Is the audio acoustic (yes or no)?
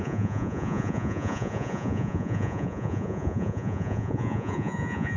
no